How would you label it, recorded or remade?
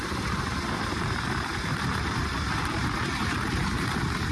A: remade